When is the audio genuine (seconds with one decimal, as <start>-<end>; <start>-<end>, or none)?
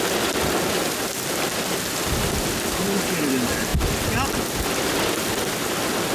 0.0-6.1